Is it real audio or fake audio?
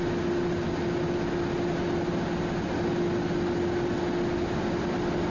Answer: real